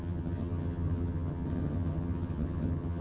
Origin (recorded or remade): remade